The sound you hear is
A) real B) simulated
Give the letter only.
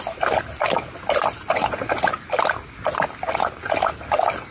A